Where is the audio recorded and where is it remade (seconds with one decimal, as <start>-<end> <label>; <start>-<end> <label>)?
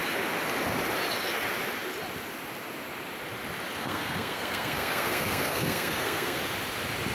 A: 0.0-3.8 recorded; 3.8-6.4 remade; 6.4-7.1 recorded